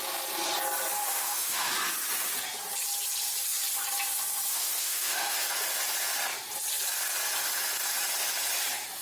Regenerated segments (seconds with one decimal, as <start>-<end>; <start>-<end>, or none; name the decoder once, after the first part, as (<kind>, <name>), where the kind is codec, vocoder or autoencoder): 1.0-1.7 (autoencoder, DAC-VAE); 4.5-5.5

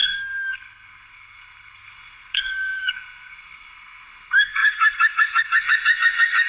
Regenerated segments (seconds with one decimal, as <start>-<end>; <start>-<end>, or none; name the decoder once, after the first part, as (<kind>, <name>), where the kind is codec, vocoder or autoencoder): 0.0-6.5 (codec, SNAC)

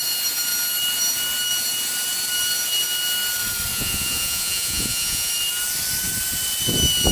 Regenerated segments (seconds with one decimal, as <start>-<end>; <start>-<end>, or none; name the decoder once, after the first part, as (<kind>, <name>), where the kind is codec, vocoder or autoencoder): 3.7-5.3 (vocoder, Vocos)